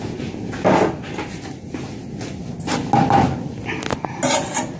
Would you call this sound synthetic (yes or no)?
no